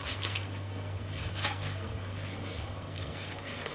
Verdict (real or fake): fake